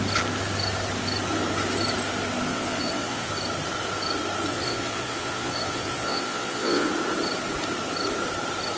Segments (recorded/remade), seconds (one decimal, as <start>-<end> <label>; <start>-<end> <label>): 0.0-2.5 recorded; 2.5-3.3 remade; 3.3-4.5 recorded; 4.5-6.9 remade; 6.9-8.8 recorded

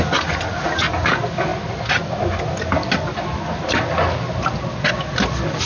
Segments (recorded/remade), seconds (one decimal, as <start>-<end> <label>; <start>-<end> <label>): 0.0-5.7 recorded

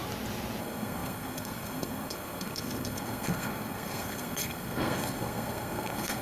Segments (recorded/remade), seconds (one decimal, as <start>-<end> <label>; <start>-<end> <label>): 0.0-0.6 recorded; 0.6-6.2 remade

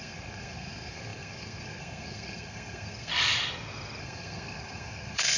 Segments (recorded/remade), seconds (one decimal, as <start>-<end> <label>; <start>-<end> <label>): 0.0-3.1 remade; 3.1-4.0 recorded; 4.0-5.4 remade

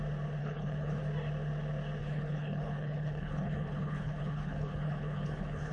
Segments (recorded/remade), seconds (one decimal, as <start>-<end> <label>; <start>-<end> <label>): 0.0-0.4 recorded; 0.4-1.0 remade; 1.0-2.0 recorded; 2.0-5.7 remade

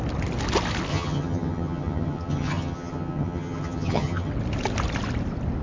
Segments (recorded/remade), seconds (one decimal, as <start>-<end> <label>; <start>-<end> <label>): 0.0-0.9 recorded; 0.9-4.3 remade; 4.3-5.6 recorded

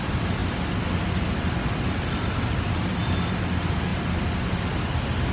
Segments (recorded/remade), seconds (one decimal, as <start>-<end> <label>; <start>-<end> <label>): 0.0-0.4 remade; 0.4-1.3 recorded; 1.3-3.9 remade; 3.9-4.8 recorded; 4.8-5.3 remade

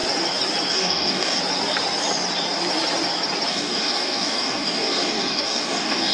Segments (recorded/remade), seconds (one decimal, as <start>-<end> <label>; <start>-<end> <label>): 0.0-0.7 recorded; 0.7-1.4 remade; 1.4-3.5 recorded; 3.5-6.1 remade